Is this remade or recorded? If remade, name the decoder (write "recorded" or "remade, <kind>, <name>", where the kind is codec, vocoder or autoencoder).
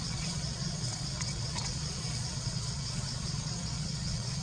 remade, vocoder, Vocos